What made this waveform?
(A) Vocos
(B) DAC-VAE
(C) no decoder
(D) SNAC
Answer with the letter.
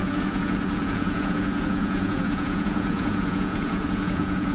A